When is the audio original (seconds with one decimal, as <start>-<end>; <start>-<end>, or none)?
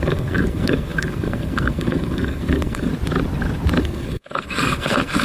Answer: 2.9-3.8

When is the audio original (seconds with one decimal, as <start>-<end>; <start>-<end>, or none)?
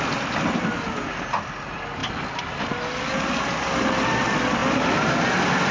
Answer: 0.0-5.7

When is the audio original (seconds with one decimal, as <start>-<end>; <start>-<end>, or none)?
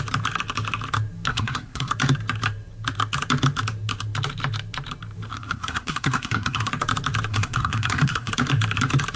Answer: 0.0-1.3; 1.9-5.3; 6.7-7.3; 8.3-9.2